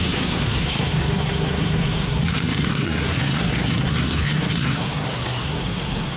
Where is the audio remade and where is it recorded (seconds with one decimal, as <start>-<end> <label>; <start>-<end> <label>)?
0.0-6.2 remade